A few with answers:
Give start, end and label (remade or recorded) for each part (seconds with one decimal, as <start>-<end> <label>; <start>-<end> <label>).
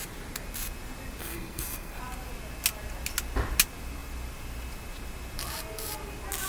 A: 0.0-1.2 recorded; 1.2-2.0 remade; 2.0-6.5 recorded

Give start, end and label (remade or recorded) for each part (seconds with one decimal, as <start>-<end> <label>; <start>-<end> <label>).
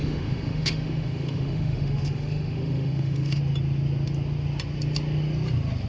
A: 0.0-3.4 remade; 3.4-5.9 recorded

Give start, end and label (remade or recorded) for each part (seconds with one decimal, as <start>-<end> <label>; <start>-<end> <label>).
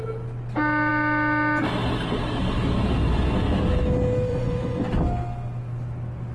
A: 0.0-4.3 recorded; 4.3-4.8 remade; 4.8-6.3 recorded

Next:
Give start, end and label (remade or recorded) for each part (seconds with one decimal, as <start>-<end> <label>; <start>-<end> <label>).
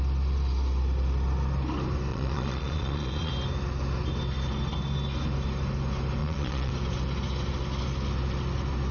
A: 0.0-2.1 recorded; 2.1-3.3 remade; 3.3-6.2 recorded; 6.2-6.7 remade; 6.7-8.9 recorded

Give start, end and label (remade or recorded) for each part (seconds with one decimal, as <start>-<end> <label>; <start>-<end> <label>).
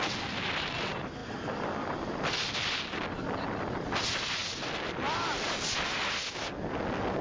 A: 0.0-7.2 recorded